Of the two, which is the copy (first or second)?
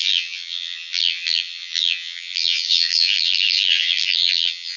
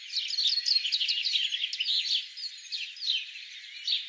first